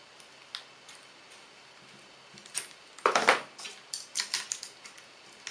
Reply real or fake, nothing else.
real